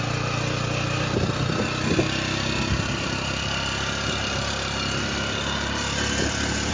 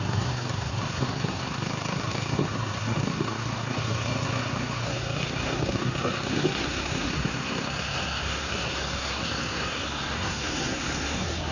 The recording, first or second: first